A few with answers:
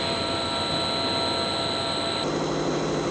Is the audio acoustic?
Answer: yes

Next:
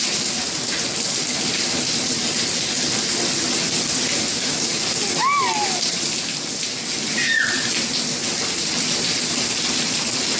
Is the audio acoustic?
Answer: yes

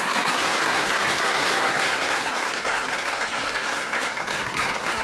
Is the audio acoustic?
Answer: no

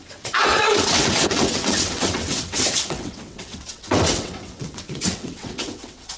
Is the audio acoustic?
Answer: no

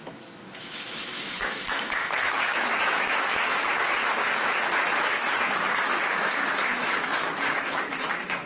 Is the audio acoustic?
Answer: no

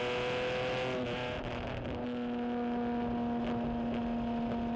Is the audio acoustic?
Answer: yes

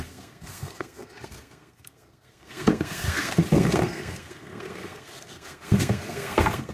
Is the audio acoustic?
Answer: no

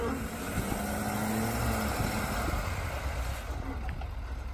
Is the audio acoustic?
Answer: yes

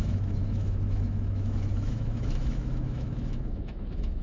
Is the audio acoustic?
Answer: no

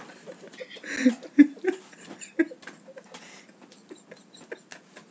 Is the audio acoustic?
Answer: yes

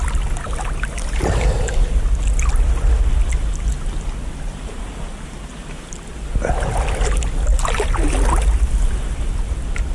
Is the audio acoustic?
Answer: yes